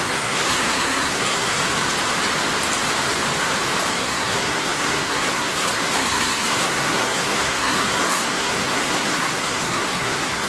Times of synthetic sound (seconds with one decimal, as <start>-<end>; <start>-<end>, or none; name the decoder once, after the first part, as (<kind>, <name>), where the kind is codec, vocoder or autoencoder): 0.0-1.6 (codec, SNAC); 3.9-10.5